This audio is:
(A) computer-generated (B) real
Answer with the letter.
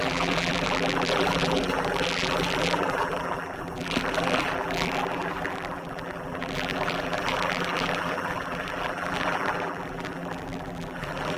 A